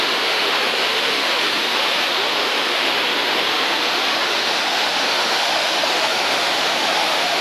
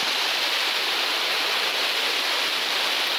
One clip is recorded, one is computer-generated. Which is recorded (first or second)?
second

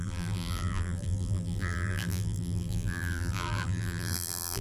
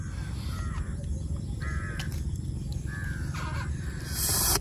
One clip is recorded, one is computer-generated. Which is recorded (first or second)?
second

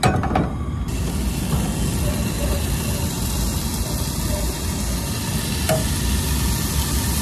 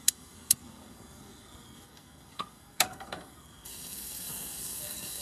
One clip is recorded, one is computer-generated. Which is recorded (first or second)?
first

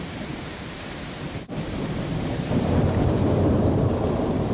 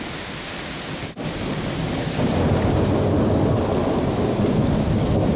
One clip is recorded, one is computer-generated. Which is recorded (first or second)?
second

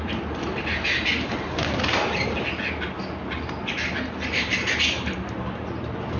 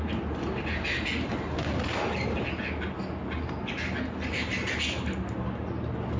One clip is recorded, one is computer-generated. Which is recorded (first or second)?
second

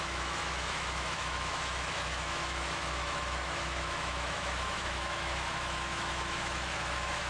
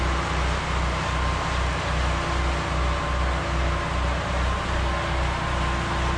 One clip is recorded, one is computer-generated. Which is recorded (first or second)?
second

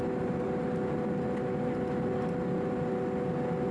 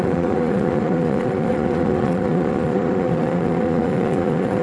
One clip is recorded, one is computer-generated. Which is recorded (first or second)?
first